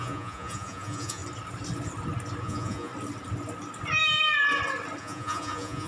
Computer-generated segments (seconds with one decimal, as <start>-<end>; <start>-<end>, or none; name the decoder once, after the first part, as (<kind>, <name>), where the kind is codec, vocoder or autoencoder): 0.0-1.2 (vocoder, Vocos); 2.4-2.9; 5.0-5.9

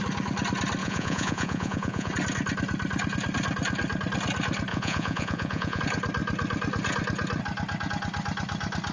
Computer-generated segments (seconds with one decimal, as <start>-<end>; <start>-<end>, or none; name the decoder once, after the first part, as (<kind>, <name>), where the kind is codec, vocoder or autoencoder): 0.8-2.1 (vocoder, Vocos); 4.7-5.8

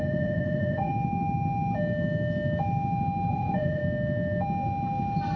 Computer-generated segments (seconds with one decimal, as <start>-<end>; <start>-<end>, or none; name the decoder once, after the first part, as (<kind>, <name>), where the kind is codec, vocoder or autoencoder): 0.0-0.9 (vocoder, Vocos); 3.3-3.8